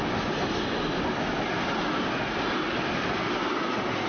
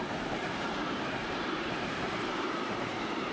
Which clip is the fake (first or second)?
second